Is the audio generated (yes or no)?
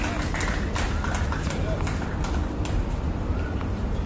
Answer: no